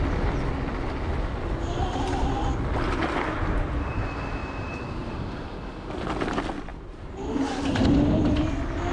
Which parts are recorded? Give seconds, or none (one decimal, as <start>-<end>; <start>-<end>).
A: 0.0-4.4; 5.4-6.7; 7.8-8.9